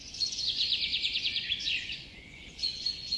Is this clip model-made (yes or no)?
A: yes